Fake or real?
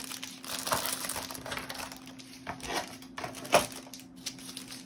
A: real